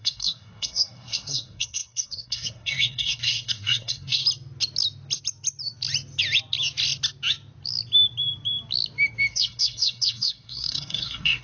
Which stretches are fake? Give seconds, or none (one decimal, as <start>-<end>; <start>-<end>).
0.0-4.2; 9.3-11.4